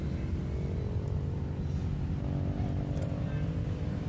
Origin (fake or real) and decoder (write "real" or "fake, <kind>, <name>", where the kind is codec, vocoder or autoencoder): real